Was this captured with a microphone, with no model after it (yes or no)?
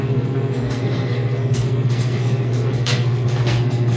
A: no